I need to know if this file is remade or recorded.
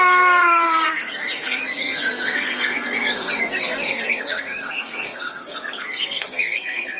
remade